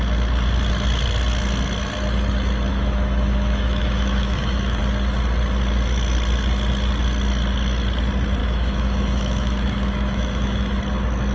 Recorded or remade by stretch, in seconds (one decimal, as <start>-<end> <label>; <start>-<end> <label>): 0.0-2.7 recorded; 2.7-4.8 remade; 4.8-8.4 recorded; 8.4-10.8 remade; 10.8-11.3 recorded